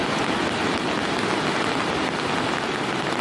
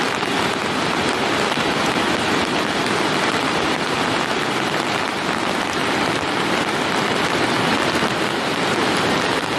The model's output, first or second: second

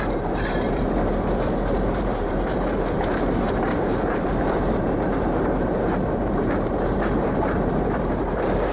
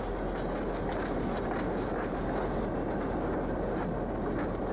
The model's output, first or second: first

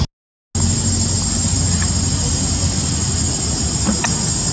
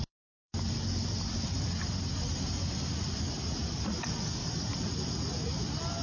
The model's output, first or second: second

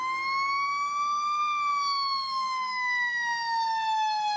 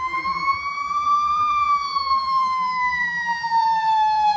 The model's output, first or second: second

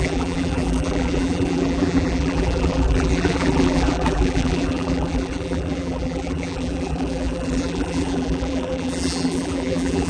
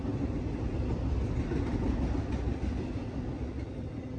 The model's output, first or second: first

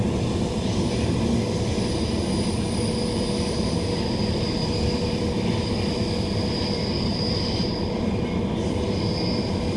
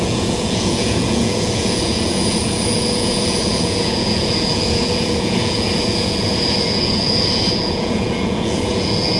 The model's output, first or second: second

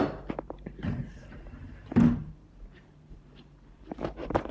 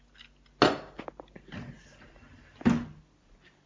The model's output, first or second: first